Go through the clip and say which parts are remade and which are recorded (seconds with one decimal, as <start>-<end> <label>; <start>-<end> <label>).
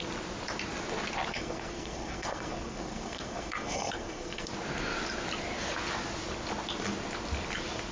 0.0-1.3 recorded; 1.3-4.5 remade; 4.5-7.9 recorded